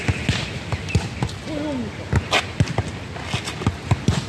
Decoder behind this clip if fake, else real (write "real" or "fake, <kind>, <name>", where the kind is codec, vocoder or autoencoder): real